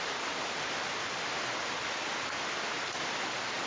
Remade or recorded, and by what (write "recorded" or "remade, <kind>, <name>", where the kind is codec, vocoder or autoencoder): recorded